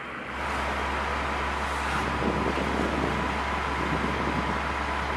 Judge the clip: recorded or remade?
recorded